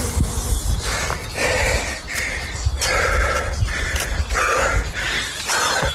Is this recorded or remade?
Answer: recorded